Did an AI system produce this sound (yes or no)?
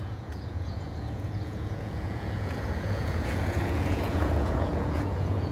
yes